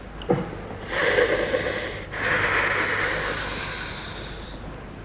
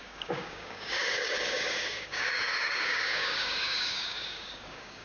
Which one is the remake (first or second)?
second